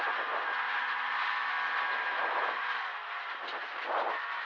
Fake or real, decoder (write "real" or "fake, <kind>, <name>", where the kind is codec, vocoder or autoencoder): real